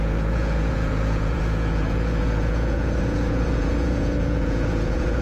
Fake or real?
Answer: fake